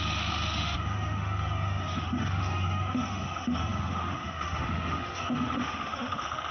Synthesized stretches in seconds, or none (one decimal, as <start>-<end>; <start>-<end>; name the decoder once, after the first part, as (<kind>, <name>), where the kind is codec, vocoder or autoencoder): 0.0-6.5 (autoencoder, DAC-VAE)

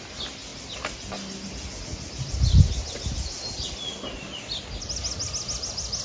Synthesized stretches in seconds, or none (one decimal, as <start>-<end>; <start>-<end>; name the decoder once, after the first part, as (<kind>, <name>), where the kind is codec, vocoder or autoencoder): none

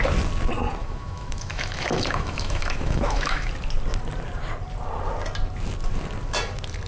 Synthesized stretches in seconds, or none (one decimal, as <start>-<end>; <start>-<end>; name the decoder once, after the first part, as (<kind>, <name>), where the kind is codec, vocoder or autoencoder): 0.8-3.5 (autoencoder, DAC-VAE)